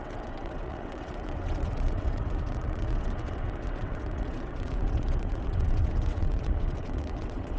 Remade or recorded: remade